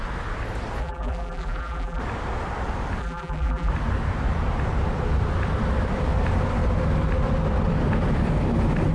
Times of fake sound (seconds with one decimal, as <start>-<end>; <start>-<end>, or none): 0.8-2.0; 3.0-3.7